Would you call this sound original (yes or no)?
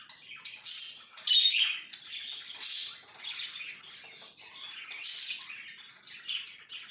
yes